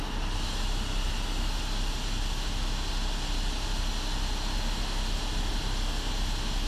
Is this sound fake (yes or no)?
no